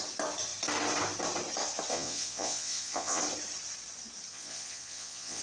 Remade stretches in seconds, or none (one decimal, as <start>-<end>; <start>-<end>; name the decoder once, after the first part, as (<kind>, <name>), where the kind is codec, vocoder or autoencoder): 1.9-3.2 (vocoder, Vocos); 4.3-5.4